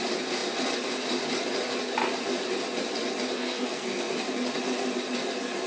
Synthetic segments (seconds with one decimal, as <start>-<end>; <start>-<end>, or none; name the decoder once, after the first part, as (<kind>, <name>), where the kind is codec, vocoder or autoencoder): 3.4-4.2 (codec, SNAC)